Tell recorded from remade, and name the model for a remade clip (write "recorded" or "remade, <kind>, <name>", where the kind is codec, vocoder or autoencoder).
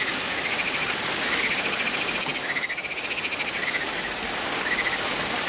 recorded